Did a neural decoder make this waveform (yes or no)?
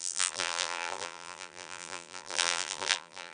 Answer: yes